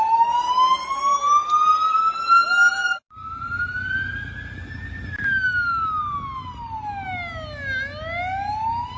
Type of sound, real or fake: real